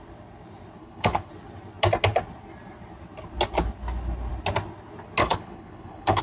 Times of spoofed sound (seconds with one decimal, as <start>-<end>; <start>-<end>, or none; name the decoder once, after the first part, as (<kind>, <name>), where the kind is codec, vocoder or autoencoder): 0.8-1.3 (codec, HILCodec); 5.2-6.2